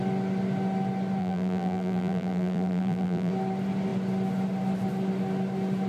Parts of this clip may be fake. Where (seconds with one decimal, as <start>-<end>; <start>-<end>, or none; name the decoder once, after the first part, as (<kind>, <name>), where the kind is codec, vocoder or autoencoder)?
1.2-3.3 (vocoder, BigVGAN v2)